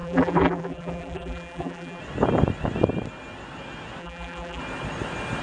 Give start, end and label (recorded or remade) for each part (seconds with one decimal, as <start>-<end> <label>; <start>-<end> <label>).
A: 0.0-2.0 remade; 2.0-4.0 recorded; 4.0-4.6 remade; 4.6-5.4 recorded